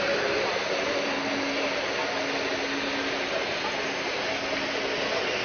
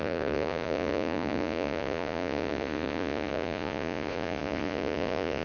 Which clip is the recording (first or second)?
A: first